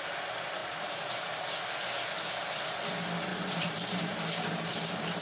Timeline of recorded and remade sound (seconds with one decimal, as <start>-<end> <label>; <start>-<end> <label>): 0.0-0.6 recorded; 0.6-1.6 remade; 1.6-3.3 recorded; 3.3-4.1 remade; 4.1-5.2 recorded